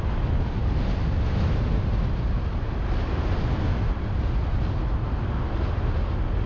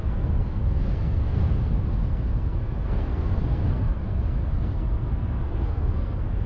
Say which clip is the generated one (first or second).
second